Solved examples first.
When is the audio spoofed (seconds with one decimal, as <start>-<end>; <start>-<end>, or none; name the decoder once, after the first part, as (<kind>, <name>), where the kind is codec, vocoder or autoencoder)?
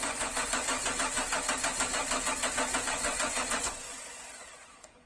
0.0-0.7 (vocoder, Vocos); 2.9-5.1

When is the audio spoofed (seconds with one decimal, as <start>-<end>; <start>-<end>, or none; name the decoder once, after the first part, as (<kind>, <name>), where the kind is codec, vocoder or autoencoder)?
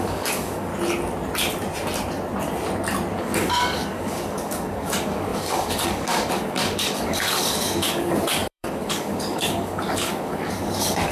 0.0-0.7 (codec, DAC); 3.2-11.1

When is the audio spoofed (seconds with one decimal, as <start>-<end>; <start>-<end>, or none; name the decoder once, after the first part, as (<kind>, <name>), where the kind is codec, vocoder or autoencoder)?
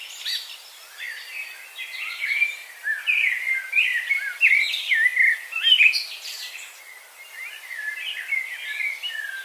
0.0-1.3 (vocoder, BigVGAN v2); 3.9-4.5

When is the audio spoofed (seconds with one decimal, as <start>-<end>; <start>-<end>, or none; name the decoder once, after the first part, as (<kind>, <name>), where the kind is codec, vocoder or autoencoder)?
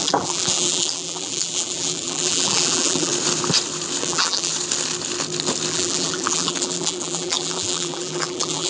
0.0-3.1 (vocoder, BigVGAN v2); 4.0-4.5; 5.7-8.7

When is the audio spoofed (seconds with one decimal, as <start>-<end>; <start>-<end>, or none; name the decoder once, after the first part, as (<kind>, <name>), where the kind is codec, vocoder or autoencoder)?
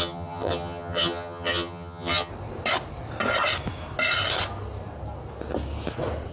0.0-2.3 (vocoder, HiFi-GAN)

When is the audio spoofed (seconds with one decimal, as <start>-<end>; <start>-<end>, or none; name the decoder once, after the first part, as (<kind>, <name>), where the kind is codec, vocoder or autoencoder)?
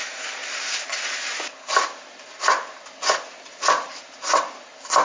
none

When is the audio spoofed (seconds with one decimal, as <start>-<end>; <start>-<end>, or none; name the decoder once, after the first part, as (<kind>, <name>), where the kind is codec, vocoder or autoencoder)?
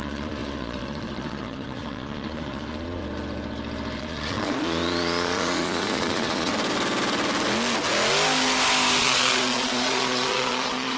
0.0-3.0 (vocoder, Vocos); 4.0-6.5; 9.0-11.0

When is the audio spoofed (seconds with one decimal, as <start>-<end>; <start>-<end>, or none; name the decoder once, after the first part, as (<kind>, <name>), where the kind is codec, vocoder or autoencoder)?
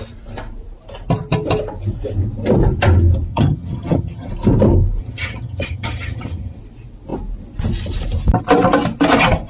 3.3-4.3 (vocoder, HiFi-GAN); 5.0-6.6